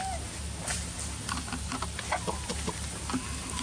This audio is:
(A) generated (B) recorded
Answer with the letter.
B